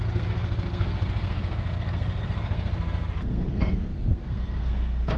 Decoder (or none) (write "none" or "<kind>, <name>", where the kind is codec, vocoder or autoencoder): codec, SNAC